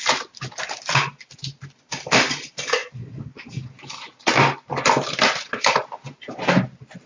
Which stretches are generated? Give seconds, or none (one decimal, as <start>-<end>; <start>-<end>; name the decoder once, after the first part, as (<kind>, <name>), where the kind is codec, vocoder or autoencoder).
none